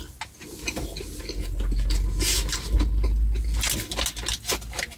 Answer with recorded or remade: recorded